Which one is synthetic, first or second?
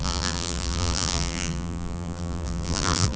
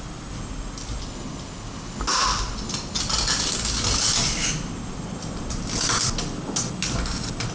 first